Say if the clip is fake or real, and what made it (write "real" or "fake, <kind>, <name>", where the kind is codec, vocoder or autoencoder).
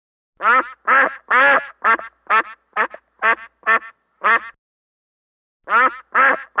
real